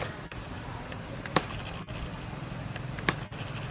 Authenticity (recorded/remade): recorded